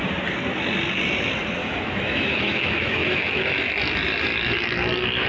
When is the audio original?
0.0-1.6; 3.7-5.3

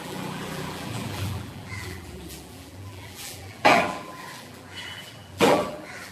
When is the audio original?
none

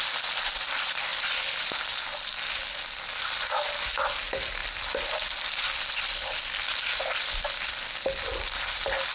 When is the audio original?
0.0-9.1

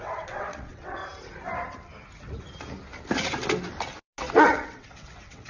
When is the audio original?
1.0-4.3

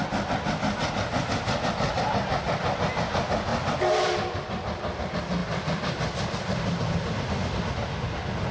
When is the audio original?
0.0-3.5; 5.0-5.4; 6.8-8.5